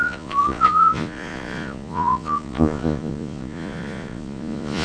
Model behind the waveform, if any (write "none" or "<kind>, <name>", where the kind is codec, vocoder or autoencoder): vocoder, Vocos